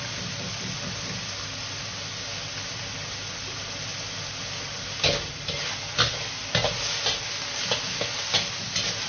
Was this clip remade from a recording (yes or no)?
no